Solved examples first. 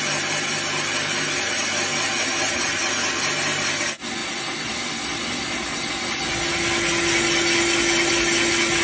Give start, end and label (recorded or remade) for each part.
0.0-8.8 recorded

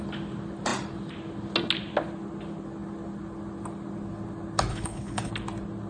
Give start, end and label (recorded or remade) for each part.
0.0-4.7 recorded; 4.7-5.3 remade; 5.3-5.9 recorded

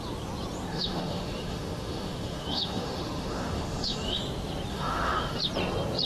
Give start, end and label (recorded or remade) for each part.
0.0-0.7 recorded; 0.7-4.2 remade; 4.2-4.7 recorded; 4.7-5.4 remade; 5.4-6.0 recorded

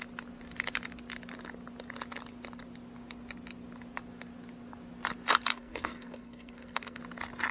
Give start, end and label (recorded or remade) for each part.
0.0-5.5 recorded; 5.5-7.0 remade; 7.0-7.5 recorded

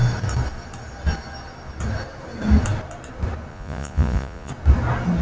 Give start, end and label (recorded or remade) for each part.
0.0-3.5 recorded; 3.5-4.5 remade; 4.5-5.2 recorded

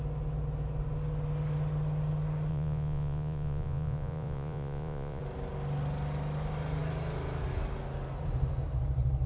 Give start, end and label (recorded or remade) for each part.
0.0-2.5 recorded; 2.5-5.2 remade; 5.2-9.3 recorded

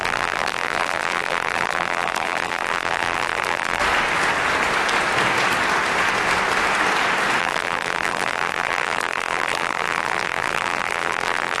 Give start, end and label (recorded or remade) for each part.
0.0-3.8 remade; 3.8-7.4 recorded; 7.4-11.6 remade

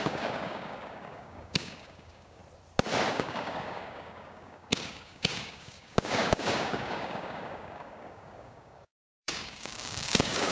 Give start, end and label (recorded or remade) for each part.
0.0-2.4 remade; 2.4-3.1 recorded; 3.1-10.5 remade